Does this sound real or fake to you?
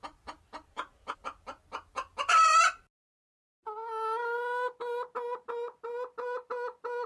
real